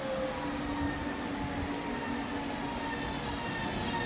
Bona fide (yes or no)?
yes